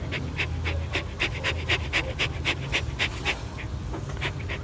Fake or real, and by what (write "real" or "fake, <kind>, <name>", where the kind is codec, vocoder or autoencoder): real